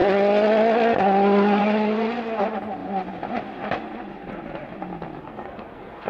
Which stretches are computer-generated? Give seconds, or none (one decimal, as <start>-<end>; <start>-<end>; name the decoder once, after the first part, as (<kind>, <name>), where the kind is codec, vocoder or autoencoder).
5.2-6.1 (codec, SNAC)